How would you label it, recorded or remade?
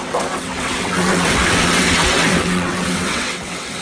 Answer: remade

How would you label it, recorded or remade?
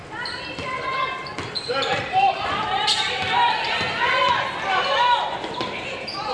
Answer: remade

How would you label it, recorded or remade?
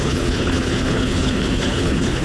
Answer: remade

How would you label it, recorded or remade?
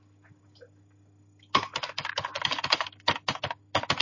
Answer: recorded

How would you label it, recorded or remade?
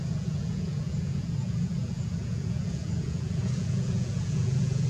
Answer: remade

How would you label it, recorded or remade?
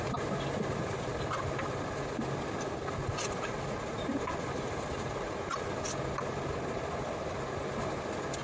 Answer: recorded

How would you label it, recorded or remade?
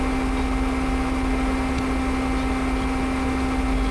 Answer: recorded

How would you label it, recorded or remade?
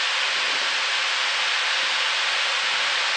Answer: recorded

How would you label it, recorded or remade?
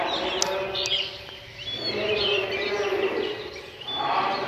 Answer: recorded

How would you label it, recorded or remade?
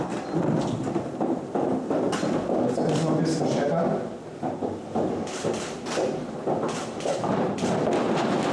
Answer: remade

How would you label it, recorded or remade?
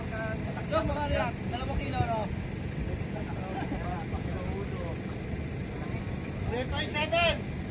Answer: recorded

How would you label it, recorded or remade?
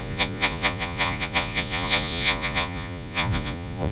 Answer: remade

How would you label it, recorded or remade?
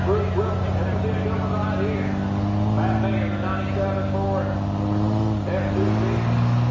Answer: recorded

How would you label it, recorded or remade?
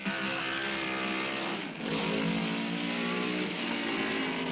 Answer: recorded